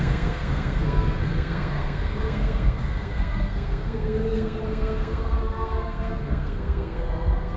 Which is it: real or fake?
fake